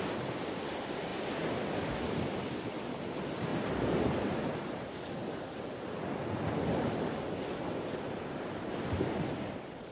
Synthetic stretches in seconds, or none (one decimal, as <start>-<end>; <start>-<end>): none